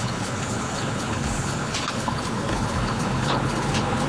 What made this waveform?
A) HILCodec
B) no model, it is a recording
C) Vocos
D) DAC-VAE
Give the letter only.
A